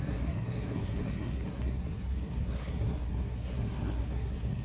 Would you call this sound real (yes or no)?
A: no